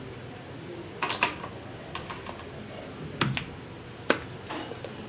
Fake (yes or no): no